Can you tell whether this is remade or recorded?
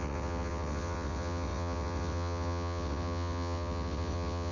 remade